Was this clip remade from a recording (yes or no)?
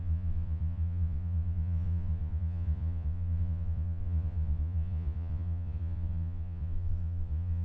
yes